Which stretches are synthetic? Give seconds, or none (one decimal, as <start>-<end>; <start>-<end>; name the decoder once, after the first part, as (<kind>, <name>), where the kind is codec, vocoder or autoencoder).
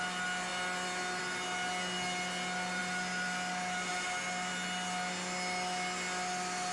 none